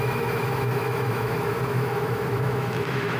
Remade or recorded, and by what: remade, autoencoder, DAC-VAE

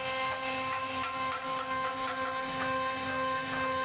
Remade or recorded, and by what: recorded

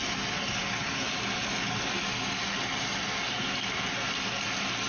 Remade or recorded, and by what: recorded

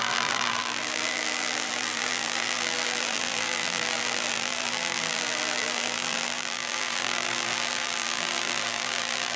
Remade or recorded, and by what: remade, vocoder, BigVGAN v2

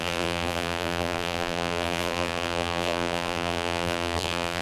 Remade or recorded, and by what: remade, vocoder, BigVGAN v2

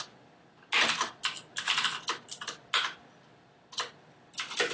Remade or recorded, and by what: recorded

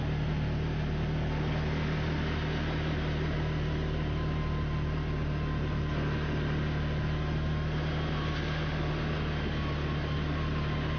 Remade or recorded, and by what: recorded